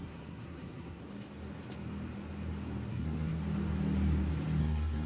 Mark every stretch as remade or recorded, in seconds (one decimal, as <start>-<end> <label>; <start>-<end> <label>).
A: 0.0-1.0 remade; 1.0-2.9 recorded; 2.9-3.4 remade; 3.4-4.6 recorded; 4.6-5.1 remade